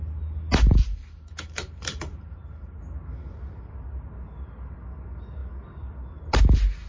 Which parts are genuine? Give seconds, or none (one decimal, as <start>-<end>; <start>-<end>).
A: 0.0-0.8; 2.8-6.9